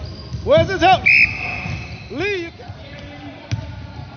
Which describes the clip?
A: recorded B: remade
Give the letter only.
A